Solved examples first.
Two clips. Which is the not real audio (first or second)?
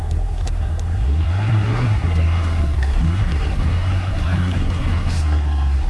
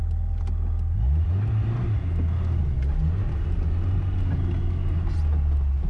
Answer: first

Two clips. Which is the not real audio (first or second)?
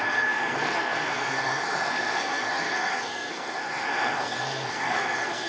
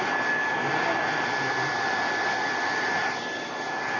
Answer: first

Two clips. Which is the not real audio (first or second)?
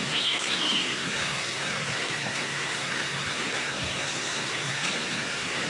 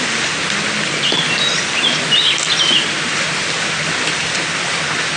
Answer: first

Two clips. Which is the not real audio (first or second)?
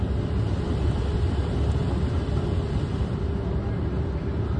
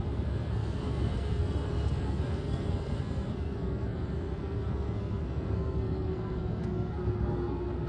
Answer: second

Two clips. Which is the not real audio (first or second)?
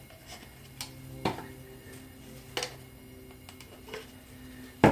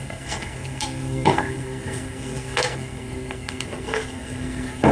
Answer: second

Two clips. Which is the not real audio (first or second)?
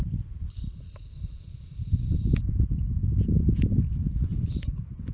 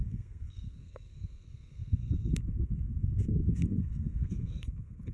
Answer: second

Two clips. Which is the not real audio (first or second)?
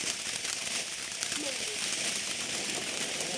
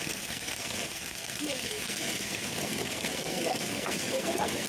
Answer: second